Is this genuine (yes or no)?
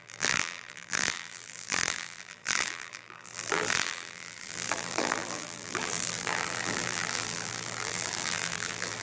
no